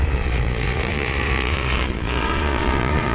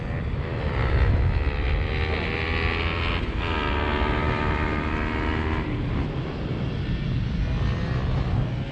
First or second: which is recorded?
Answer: second